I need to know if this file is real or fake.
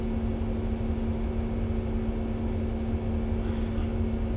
real